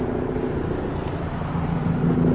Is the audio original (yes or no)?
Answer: yes